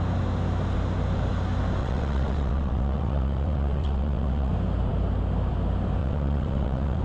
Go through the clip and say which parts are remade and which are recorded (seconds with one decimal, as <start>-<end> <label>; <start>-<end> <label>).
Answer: 0.0-1.8 recorded; 1.8-4.5 remade; 4.5-6.0 recorded; 6.0-7.0 remade